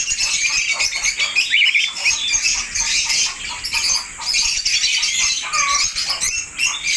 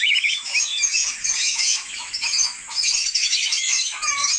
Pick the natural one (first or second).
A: first